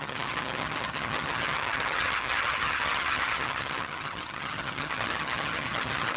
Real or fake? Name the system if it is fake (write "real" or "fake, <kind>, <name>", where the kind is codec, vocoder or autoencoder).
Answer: fake, vocoder, HiFi-GAN